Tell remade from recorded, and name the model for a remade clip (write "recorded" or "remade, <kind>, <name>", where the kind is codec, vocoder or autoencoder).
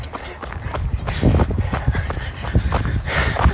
recorded